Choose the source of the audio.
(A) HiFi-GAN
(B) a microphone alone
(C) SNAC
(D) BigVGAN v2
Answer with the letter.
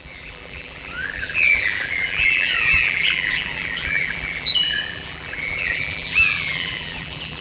D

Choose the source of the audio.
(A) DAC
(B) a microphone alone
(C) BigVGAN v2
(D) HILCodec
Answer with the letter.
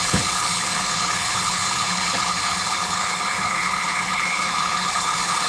D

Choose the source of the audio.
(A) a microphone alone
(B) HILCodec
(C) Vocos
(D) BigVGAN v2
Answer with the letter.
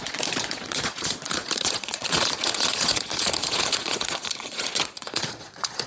C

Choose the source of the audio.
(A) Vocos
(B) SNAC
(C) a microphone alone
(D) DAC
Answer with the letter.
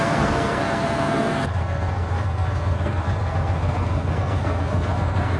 B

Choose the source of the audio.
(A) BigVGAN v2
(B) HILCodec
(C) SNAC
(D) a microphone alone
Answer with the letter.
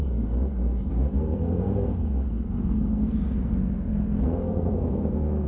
C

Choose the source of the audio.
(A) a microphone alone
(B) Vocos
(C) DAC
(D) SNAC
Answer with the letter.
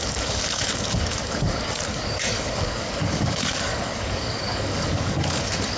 C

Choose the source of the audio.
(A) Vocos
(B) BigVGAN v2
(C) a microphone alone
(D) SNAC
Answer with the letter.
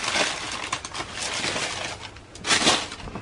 C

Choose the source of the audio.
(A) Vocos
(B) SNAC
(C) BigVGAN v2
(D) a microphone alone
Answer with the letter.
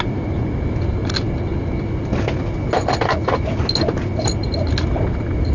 D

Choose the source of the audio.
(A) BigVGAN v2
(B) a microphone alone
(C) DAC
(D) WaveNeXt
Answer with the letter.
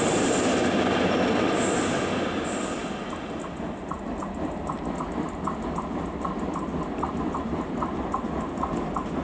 B